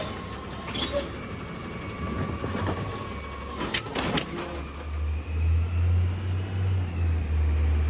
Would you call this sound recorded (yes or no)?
yes